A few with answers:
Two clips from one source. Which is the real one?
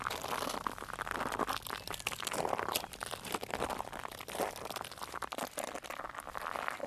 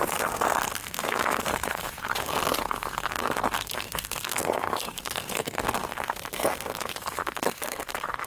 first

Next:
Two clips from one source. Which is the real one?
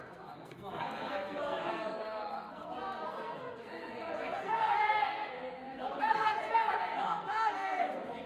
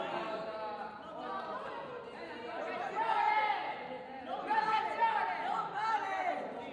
second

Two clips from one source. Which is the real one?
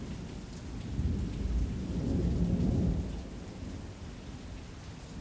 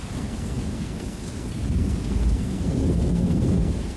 first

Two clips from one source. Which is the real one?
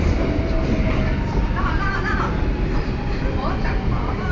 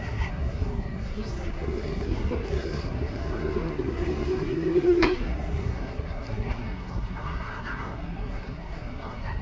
first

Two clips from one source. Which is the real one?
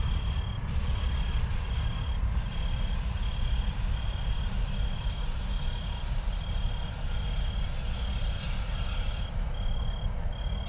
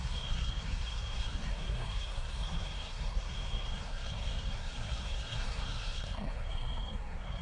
first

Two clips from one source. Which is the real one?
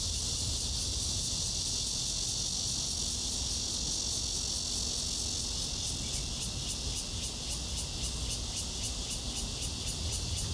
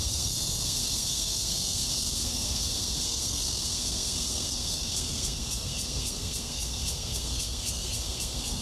first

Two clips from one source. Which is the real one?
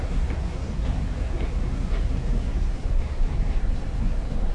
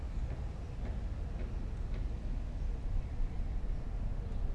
second